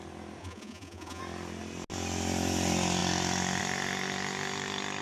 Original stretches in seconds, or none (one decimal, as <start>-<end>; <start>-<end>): 0.0-0.4; 1.2-5.0